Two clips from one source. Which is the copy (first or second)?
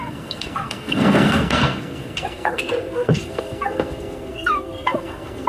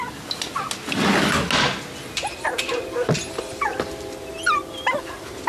first